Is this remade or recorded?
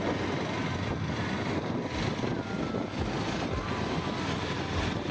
recorded